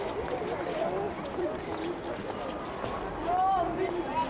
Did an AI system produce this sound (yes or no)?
no